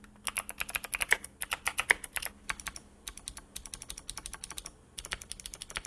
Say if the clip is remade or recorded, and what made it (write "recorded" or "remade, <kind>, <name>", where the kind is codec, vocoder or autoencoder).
recorded